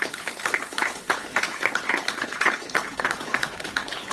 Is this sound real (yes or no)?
no